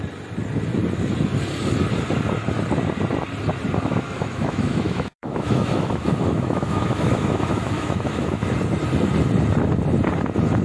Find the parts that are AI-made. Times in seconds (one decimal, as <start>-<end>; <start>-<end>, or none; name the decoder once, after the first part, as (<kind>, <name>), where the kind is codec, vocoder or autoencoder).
3.9-8.5 (autoencoder, DAC-VAE)